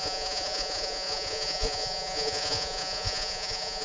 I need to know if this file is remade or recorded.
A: remade